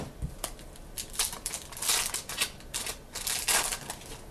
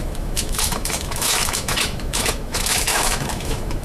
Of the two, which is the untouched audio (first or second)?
first